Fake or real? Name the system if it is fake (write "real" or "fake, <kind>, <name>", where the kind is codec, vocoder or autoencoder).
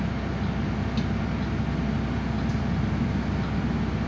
real